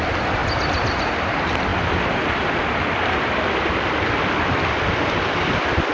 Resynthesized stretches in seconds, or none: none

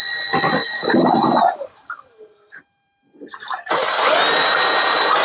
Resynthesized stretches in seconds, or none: 0.6-3.7 (vocoder, BigVGAN v2)

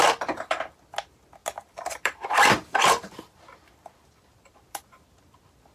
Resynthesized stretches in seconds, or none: 1.4-4.8 (vocoder, BigVGAN v2)